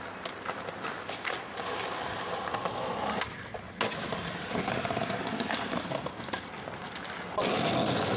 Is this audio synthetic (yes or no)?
no